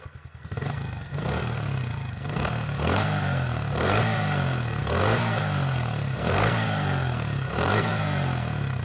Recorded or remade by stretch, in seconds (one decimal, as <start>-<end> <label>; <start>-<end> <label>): 0.0-8.8 remade